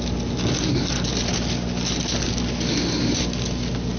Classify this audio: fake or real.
real